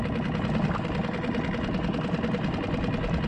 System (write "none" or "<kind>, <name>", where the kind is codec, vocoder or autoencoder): none